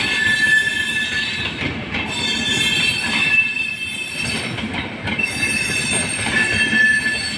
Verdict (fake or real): real